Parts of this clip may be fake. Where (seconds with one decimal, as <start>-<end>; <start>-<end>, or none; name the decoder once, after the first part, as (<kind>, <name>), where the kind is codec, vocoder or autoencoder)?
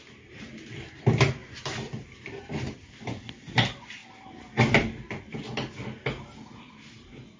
0.0-4.0 (vocoder, BigVGAN v2); 6.9-7.4